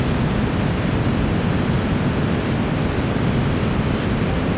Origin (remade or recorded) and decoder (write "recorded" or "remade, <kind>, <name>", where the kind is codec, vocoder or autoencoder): recorded